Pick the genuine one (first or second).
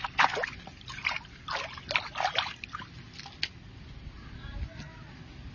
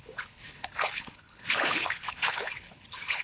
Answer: first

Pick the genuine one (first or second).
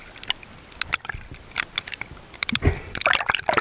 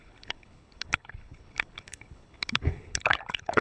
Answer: first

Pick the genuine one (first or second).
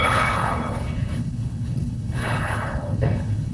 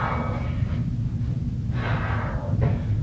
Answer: second